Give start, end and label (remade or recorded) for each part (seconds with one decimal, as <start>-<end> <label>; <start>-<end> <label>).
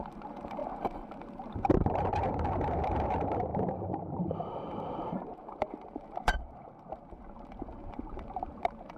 0.0-0.6 remade; 0.6-1.1 recorded; 1.1-9.0 remade